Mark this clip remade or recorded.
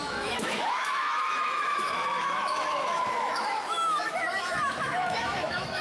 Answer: remade